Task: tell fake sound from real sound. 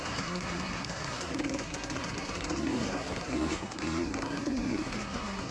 fake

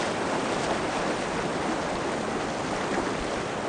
real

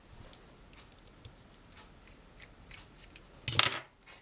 real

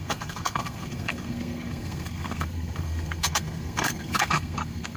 fake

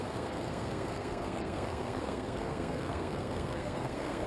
fake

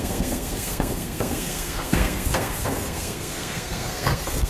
fake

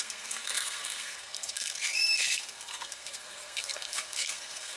fake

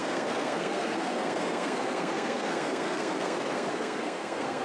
fake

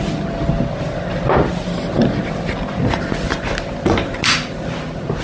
real